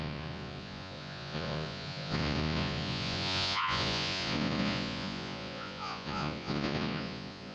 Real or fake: fake